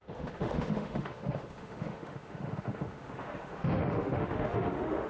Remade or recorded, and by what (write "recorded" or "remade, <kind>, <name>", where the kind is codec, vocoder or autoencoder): remade, autoencoder, DAC-VAE